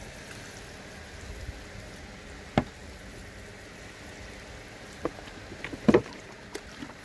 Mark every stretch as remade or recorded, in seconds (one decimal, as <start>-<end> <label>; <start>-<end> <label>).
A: 0.0-7.0 recorded